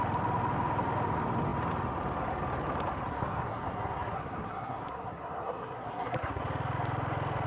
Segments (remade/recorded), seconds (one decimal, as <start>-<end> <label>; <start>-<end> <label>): 0.0-3.1 recorded; 3.1-6.4 remade; 6.4-7.5 recorded

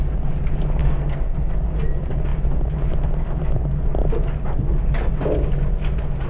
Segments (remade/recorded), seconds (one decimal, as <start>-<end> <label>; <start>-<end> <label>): 0.0-0.8 recorded; 0.8-1.5 remade; 1.5-6.3 recorded

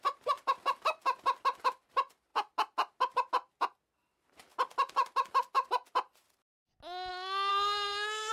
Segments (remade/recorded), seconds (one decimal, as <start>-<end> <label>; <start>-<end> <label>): 0.0-7.5 recorded; 7.5-8.3 remade

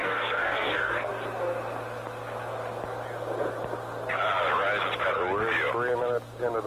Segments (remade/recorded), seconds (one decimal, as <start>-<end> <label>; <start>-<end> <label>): 0.0-1.1 remade; 1.1-6.7 recorded

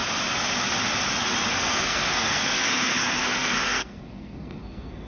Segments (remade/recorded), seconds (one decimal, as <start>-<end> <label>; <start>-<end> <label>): 0.0-1.6 recorded; 1.6-5.1 remade

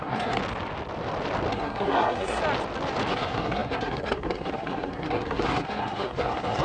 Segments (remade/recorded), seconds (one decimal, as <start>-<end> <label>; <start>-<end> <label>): 0.0-0.4 remade; 0.4-1.5 recorded; 1.5-2.4 remade; 2.4-3.1 recorded; 3.1-6.6 remade